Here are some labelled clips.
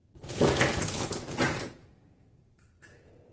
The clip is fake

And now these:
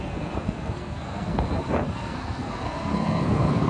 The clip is fake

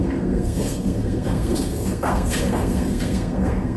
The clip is fake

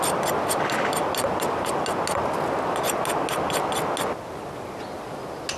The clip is real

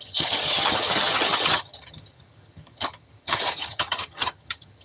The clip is fake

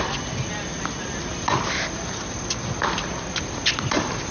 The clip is real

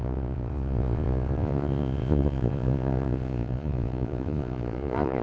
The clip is fake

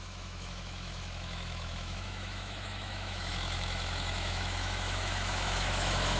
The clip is fake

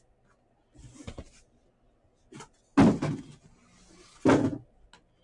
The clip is real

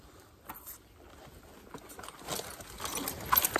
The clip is real